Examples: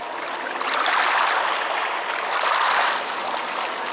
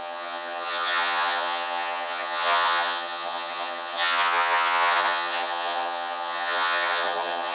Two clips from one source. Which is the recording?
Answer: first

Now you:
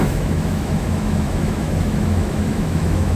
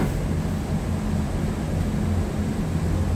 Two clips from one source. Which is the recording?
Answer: second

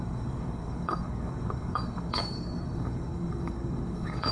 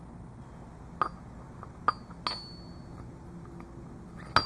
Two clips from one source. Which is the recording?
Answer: second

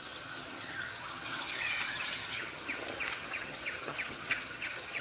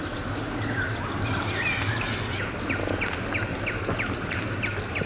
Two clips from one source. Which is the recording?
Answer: second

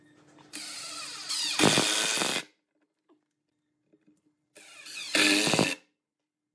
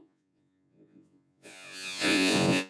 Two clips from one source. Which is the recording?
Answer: first